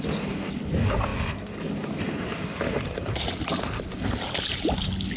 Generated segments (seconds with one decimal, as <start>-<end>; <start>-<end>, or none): none